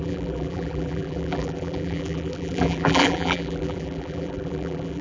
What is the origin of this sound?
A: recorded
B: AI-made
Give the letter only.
B